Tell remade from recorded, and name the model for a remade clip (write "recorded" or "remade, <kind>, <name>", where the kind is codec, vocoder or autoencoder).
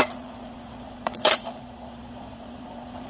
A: remade, vocoder, Vocos